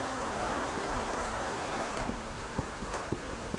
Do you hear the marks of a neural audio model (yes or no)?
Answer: yes